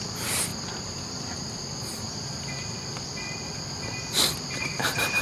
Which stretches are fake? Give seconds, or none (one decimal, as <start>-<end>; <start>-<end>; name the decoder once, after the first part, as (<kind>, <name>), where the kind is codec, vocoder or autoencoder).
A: none